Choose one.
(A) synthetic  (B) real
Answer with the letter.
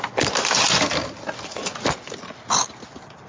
B